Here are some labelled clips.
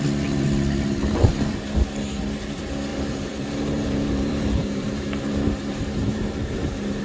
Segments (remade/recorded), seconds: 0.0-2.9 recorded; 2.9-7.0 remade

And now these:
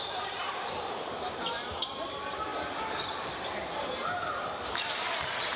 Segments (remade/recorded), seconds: 0.0-2.5 remade; 2.5-3.8 recorded; 3.8-5.6 remade

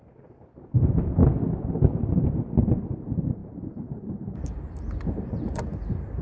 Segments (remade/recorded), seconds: 0.0-1.2 remade; 1.2-1.8 recorded; 1.8-6.2 remade